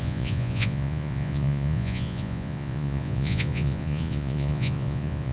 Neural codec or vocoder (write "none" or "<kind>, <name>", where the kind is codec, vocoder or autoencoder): vocoder, Vocos